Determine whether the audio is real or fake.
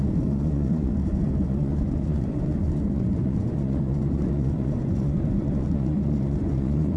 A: fake